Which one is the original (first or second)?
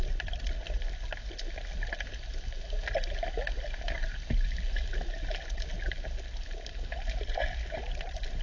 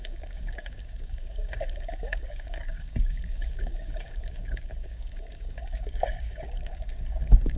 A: first